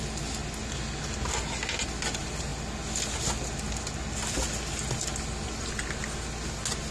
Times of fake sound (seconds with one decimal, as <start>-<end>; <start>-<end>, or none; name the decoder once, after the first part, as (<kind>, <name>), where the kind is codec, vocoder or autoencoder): none